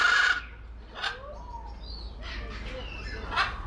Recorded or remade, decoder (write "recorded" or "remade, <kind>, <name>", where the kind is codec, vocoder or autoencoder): recorded